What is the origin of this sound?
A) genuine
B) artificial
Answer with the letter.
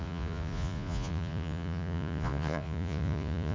B